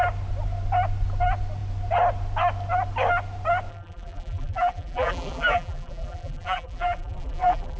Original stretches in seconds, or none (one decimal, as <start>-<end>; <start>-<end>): 0.0-3.7